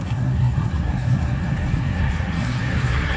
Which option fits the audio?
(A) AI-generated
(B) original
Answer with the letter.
A